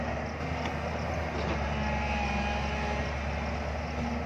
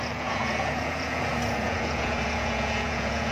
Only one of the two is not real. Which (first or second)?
second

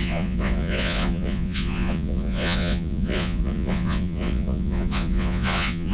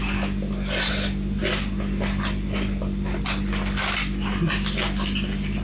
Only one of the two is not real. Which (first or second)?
first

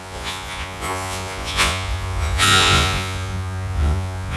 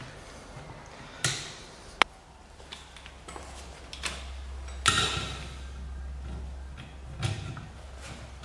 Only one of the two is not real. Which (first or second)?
first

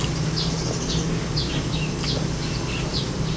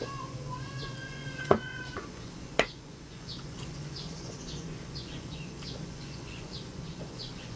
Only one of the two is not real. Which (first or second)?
second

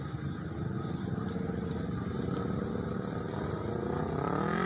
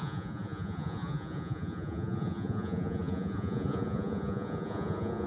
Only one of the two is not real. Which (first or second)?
second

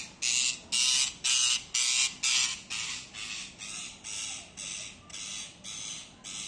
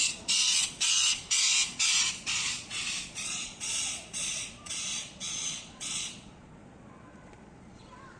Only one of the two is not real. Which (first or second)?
second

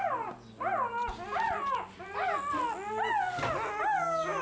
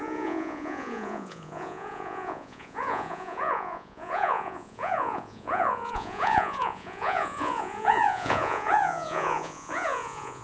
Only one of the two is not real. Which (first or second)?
second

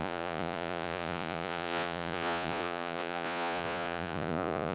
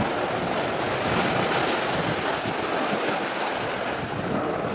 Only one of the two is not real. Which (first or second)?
first